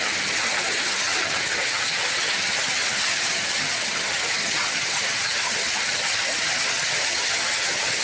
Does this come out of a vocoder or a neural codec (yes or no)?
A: yes